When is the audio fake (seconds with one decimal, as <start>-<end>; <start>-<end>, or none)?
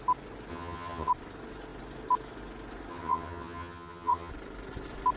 0.5-1.1; 2.9-4.3